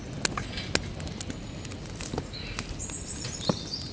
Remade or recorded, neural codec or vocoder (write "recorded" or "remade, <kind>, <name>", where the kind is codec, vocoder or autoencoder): recorded